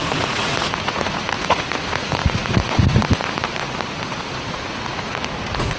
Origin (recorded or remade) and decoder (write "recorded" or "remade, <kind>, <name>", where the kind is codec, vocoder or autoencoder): remade, vocoder, Vocos